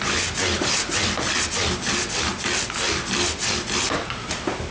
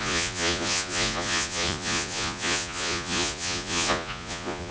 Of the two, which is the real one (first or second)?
first